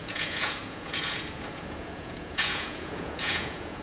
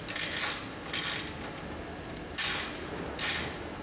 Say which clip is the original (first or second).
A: second